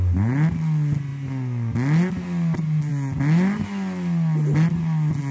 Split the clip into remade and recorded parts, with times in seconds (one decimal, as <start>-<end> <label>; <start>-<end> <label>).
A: 0.0-5.3 recorded

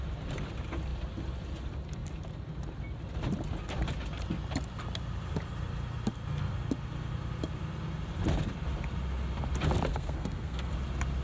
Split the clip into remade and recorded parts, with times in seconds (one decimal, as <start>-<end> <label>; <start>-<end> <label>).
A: 0.0-9.9 recorded; 9.9-10.7 remade; 10.7-11.2 recorded

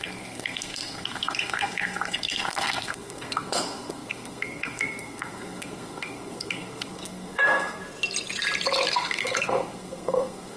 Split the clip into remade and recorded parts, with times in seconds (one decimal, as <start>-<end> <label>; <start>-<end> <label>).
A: 0.0-7.8 remade; 7.8-8.9 recorded; 8.9-10.6 remade

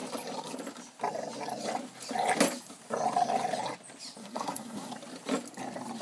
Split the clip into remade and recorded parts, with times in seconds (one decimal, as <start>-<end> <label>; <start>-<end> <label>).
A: 0.0-4.2 recorded; 4.2-4.9 remade; 4.9-6.0 recorded

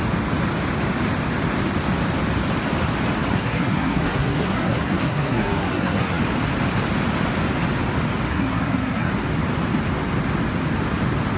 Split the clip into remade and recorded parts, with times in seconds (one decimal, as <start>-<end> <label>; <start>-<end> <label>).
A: 0.0-3.3 recorded; 3.3-6.2 remade; 6.2-8.3 recorded; 8.3-9.1 remade; 9.1-11.4 recorded

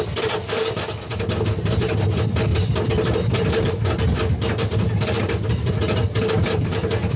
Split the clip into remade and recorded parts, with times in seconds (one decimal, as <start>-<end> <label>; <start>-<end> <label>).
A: 0.0-7.2 recorded

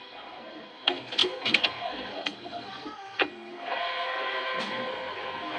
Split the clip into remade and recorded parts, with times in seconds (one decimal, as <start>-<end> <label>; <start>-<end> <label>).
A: 0.0-5.6 remade